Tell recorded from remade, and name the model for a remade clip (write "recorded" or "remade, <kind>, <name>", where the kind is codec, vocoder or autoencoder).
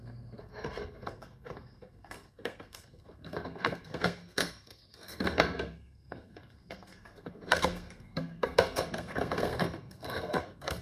remade, codec, SNAC